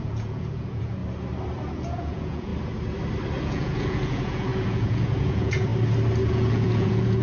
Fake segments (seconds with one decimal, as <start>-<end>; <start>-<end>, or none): 0.0-1.0; 1.7-2.5; 3.4-5.7; 6.3-7.2